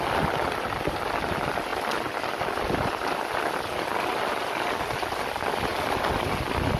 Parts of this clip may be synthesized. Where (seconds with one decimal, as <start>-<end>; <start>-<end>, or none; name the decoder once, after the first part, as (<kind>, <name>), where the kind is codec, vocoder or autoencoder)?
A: none